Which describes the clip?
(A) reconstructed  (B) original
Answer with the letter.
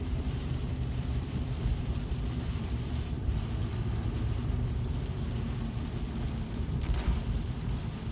A